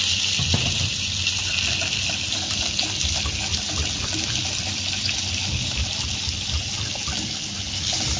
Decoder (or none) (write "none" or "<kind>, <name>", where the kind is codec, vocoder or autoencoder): none